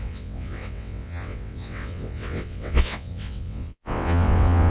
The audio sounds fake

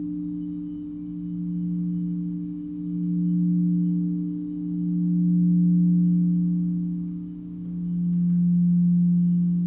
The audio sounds real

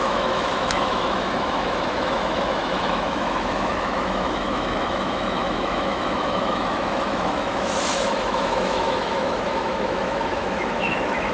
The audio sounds fake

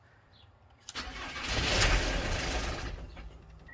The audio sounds fake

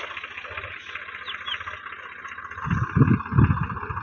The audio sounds real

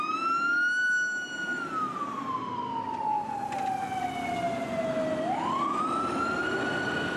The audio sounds real